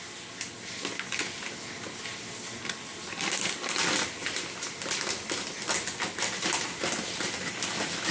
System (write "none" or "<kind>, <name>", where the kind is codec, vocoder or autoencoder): none